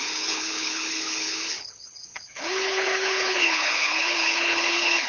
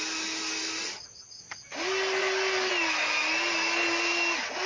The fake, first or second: first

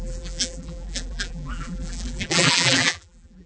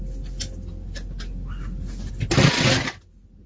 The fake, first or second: first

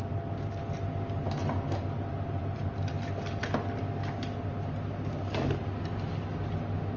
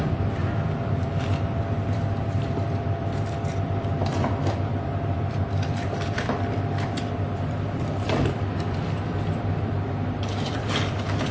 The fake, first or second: second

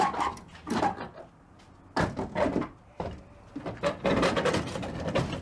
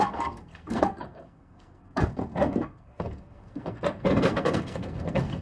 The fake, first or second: second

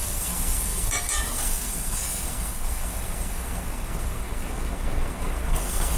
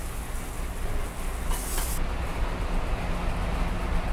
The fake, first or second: first